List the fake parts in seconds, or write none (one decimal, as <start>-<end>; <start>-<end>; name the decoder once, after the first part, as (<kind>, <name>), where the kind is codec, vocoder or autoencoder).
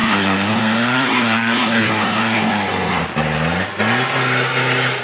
0.0-3.0 (codec, SNAC)